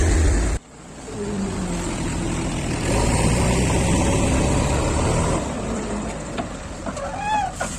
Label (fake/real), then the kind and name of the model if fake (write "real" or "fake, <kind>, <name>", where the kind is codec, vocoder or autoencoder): real